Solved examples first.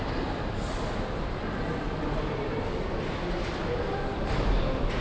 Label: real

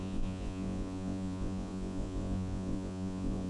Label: fake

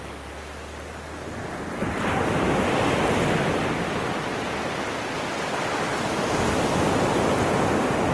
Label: real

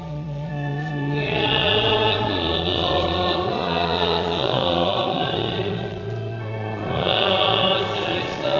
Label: fake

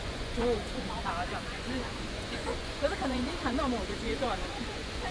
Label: fake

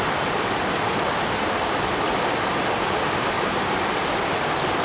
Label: real